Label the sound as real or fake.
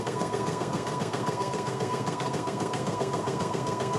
fake